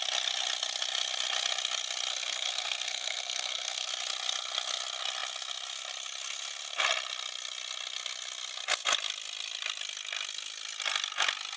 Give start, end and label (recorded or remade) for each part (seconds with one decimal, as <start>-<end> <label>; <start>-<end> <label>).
0.0-2.1 recorded; 2.1-3.9 remade; 3.9-11.6 recorded